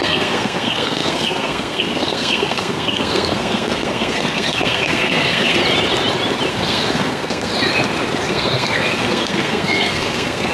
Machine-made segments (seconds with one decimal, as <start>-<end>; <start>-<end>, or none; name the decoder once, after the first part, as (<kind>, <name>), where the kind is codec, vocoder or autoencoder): 0.0-5.6 (codec, SNAC); 6.5-7.5; 8.3-10.5

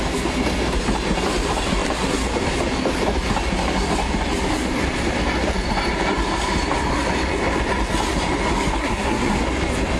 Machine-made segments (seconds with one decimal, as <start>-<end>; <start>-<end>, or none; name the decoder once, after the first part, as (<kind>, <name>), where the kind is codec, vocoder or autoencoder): 8.8-9.4 (codec, SNAC)

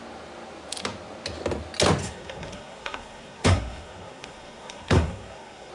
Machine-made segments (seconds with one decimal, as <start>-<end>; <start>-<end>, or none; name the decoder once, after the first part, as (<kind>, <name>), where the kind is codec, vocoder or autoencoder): 2.0-5.7 (codec, SNAC)

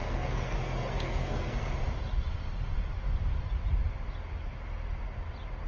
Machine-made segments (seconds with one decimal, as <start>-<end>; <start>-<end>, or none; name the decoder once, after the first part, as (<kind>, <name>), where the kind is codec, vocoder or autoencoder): 0.0-1.7 (codec, SNAC)